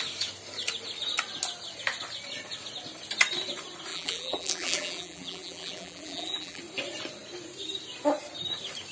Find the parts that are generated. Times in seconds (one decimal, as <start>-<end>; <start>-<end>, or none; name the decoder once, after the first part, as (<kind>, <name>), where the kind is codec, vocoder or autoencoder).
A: 3.9-6.6 (vocoder, BigVGAN v2)